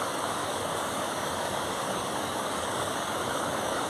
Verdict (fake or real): fake